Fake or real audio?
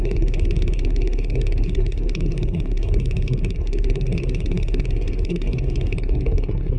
fake